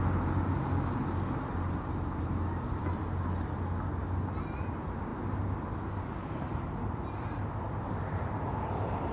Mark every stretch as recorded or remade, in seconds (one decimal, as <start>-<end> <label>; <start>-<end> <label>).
0.0-6.2 recorded; 6.2-7.4 remade; 7.4-9.1 recorded